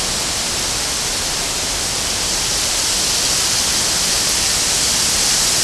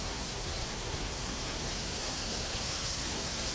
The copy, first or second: second